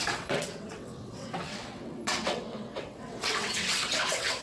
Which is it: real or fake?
fake